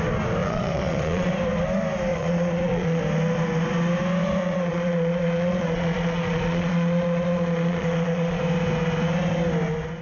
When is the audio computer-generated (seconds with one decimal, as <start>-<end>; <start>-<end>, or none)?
0.4-1.3; 2.1-3.0; 4.4-8.4